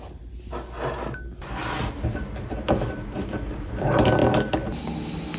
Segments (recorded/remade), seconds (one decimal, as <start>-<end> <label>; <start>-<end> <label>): 0.0-5.4 recorded